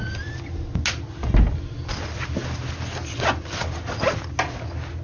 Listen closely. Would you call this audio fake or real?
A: real